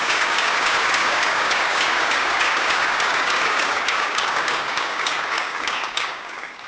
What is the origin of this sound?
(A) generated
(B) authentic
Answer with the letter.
A